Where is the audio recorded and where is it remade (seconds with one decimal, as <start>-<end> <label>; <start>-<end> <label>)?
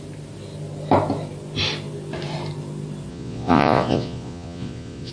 0.0-3.1 recorded; 3.1-5.1 remade